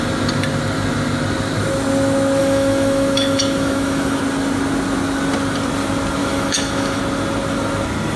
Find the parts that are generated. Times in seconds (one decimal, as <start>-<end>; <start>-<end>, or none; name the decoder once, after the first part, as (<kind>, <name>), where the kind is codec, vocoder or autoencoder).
2.4-4.2 (autoencoder, DAC-VAE); 6.2-7.0

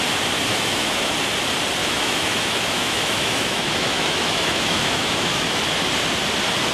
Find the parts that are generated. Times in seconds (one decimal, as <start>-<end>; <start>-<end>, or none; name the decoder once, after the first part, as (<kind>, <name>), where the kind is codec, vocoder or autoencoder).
0.5-1.1 (autoencoder, DAC-VAE); 1.8-5.6

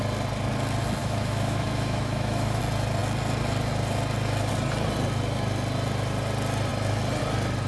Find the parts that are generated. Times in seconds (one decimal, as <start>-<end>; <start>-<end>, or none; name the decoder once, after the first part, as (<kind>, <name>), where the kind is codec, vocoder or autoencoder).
1.0-2.6 (autoencoder, DAC-VAE)